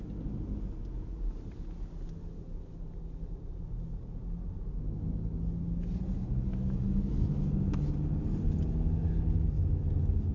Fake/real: real